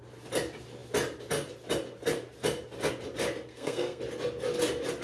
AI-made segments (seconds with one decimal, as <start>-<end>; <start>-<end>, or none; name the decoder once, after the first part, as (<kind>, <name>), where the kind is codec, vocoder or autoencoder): 3.5-4.0 (codec, SNAC)